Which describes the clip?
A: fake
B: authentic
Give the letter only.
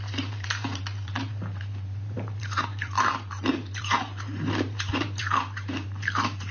A